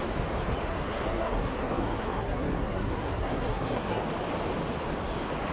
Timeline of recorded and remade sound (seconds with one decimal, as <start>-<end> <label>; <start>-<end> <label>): 0.0-0.7 recorded; 0.7-4.0 remade; 4.0-5.5 recorded